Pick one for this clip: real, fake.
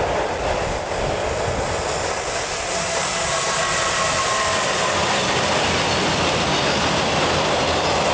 real